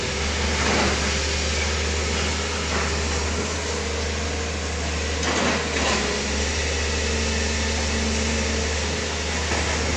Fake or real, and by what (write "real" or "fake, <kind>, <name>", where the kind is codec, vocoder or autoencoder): real